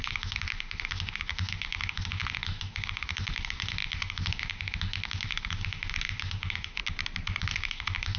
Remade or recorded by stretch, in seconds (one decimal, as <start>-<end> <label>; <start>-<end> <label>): 0.0-6.8 remade; 6.8-7.4 recorded; 7.4-8.2 remade